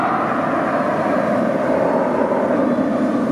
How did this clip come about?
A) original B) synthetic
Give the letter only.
A